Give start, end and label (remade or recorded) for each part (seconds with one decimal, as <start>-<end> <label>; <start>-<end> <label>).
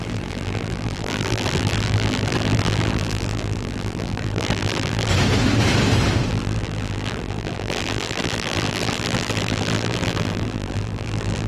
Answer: 0.0-5.1 remade; 5.1-6.3 recorded; 6.3-11.5 remade